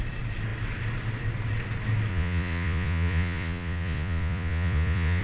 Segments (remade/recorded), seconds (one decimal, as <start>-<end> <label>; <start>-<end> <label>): 0.0-2.1 recorded; 2.1-5.2 remade